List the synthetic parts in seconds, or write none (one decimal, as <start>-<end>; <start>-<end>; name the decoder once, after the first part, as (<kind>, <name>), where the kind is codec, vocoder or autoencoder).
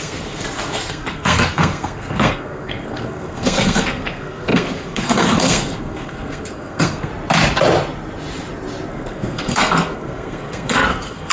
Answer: 0.0-7.1 (codec, SNAC); 8.9-11.3